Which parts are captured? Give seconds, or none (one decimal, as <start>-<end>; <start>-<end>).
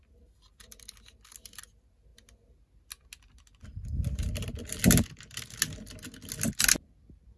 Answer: 0.0-7.4